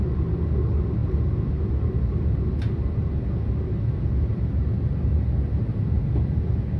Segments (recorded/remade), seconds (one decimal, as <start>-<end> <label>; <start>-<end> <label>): 0.0-4.6 recorded; 4.6-5.6 remade; 5.6-6.8 recorded

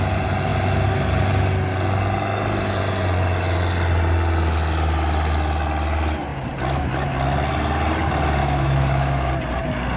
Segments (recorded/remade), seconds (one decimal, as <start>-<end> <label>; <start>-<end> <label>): 0.0-8.4 recorded; 8.4-9.3 remade; 9.3-10.0 recorded